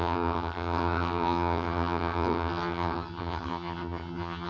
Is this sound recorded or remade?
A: remade